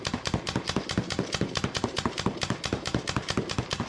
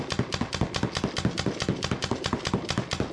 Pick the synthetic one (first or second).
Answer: first